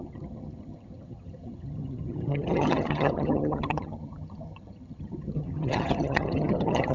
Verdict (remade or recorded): remade